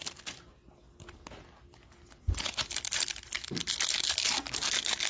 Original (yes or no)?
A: yes